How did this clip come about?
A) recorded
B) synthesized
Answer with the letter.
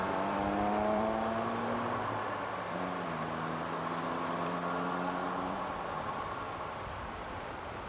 B